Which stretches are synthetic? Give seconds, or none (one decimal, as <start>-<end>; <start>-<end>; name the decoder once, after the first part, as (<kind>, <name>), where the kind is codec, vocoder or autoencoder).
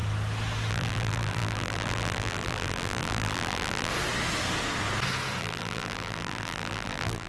0.7-3.9 (vocoder, BigVGAN v2); 5.4-7.3